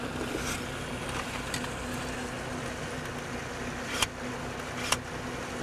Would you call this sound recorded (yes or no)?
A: yes